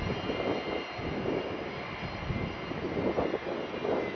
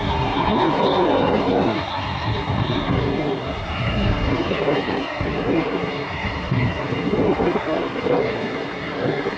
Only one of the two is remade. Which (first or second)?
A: second